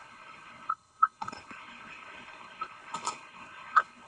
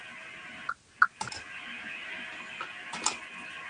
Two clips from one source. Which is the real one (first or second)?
second